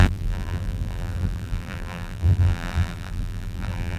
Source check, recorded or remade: remade